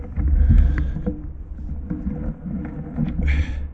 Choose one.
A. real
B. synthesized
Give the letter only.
A